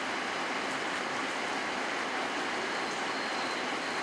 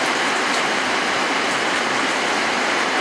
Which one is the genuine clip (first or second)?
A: first